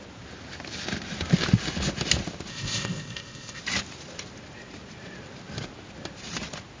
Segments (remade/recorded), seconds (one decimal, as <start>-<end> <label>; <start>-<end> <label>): 0.0-2.5 recorded; 2.5-3.6 remade; 3.6-6.8 recorded